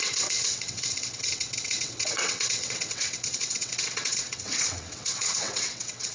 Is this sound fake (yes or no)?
yes